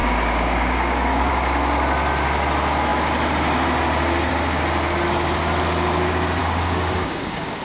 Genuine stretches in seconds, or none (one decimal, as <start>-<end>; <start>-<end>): 1.3-6.4